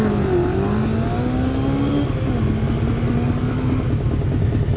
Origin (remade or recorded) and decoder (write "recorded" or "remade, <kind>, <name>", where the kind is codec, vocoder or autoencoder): recorded